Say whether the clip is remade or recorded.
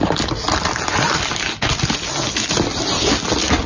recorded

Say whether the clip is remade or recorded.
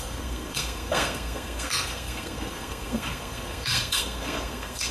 remade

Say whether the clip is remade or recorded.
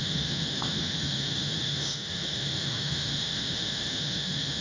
remade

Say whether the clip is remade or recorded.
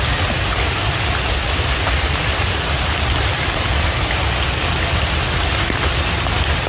recorded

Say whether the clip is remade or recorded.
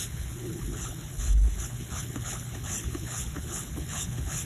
remade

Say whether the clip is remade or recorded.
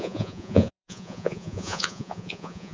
remade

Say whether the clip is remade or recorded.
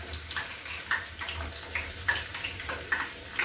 recorded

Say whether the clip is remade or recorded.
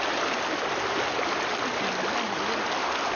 recorded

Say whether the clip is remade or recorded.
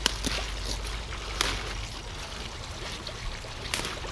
recorded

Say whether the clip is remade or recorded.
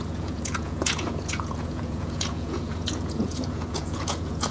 remade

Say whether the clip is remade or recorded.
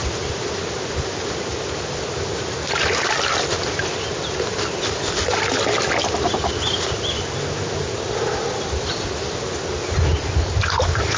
recorded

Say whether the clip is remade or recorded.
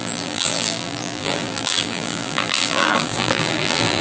remade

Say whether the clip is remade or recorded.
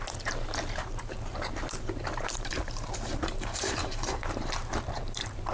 remade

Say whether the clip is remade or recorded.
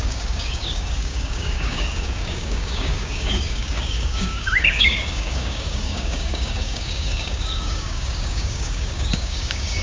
remade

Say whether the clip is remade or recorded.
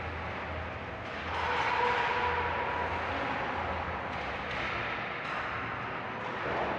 recorded